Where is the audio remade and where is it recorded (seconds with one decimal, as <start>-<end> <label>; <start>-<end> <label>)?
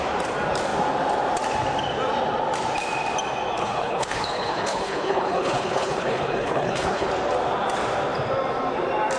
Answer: 0.0-3.6 recorded; 3.6-7.1 remade; 7.1-9.2 recorded